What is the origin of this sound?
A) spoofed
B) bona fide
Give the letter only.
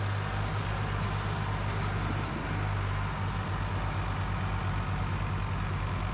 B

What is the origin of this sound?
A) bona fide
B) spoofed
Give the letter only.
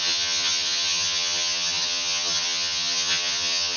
B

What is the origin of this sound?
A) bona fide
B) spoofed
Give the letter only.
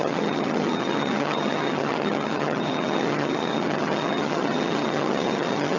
B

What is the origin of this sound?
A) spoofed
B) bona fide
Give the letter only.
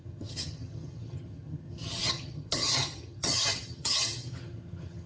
A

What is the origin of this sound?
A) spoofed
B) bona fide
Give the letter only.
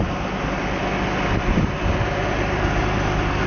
B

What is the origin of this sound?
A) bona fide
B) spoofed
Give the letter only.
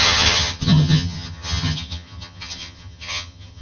B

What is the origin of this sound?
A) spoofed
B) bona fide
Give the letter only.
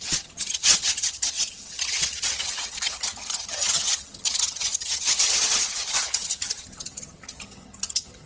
A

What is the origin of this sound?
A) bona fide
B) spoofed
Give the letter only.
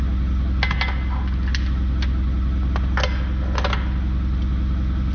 A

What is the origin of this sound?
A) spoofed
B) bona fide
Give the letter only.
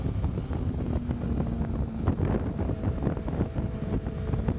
B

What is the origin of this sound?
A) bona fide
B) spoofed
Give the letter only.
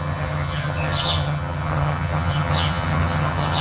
B